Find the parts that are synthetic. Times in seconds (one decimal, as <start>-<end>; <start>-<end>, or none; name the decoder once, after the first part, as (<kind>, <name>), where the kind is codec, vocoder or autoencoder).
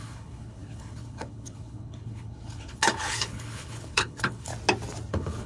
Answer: 0.0-4.5 (codec, HILCodec); 5.1-5.5